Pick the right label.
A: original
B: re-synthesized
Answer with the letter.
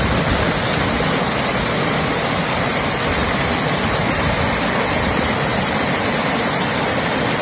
A